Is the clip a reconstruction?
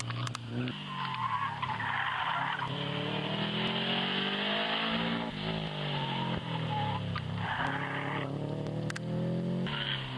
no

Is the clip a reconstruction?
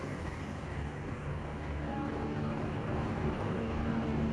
yes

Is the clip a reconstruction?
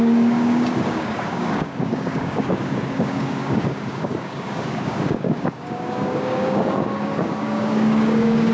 yes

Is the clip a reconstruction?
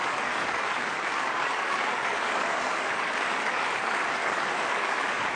yes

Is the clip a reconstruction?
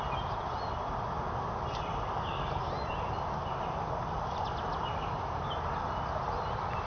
no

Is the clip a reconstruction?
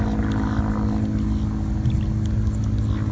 no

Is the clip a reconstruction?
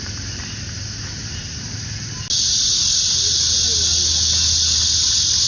no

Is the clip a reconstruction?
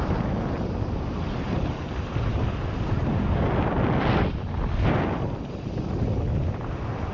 no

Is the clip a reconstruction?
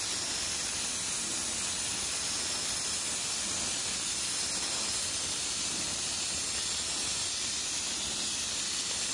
no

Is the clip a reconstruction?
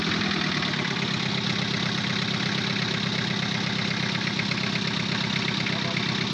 no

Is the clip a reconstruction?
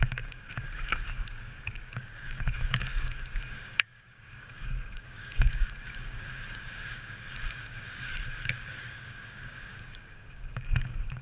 yes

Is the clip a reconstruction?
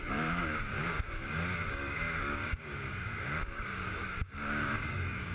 yes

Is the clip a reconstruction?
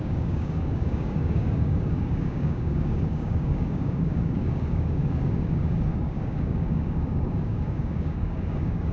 yes